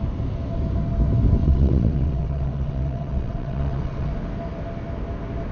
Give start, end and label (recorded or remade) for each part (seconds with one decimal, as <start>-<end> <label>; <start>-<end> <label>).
0.0-1.4 recorded; 1.4-4.1 remade; 4.1-5.5 recorded